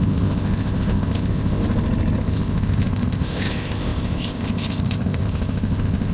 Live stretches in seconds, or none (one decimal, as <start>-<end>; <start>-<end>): 1.6-2.2